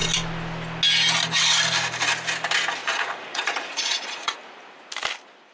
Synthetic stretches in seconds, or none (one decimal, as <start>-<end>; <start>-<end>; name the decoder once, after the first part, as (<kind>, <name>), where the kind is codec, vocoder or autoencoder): 2.8-4.4 (vocoder, Vocos)